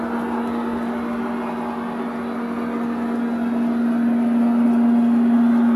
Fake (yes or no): no